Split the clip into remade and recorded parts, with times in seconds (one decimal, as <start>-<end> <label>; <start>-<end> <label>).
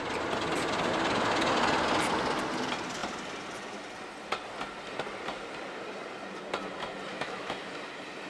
0.0-7.1 recorded; 7.1-7.7 remade; 7.7-8.3 recorded